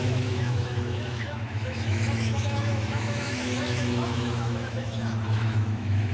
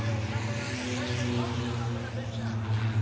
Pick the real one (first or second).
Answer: second